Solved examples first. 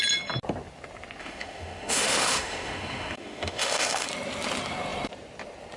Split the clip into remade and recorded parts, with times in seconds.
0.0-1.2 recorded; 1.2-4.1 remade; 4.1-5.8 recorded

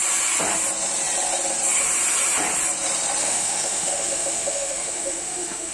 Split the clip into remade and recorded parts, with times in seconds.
0.0-3.2 recorded; 3.2-5.7 remade

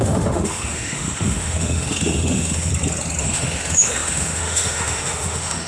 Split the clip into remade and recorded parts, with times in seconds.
0.0-2.7 remade; 2.7-3.2 recorded; 3.2-5.7 remade

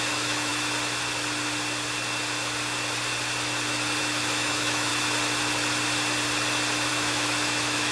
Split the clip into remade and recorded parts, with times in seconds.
0.0-0.5 remade; 0.5-4.0 recorded; 4.0-4.9 remade; 4.9-6.9 recorded; 6.9-7.9 remade

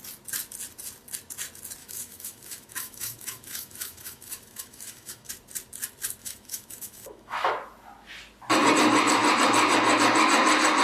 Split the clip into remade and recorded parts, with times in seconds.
0.0-1.8 recorded; 1.8-5.3 remade; 5.3-6.2 recorded; 6.2-7.5 remade; 7.5-10.8 recorded